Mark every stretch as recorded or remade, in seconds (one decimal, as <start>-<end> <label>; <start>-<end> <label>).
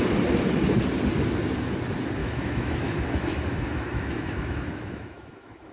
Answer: 0.0-2.2 recorded; 2.2-5.7 remade